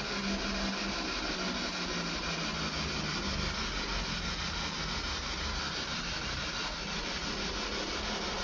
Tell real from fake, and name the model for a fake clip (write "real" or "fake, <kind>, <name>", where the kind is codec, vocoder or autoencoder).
real